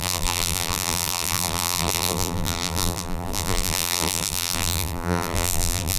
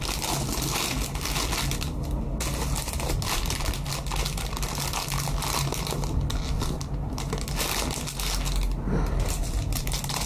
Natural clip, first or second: second